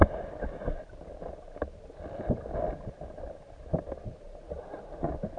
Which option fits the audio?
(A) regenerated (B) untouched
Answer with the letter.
B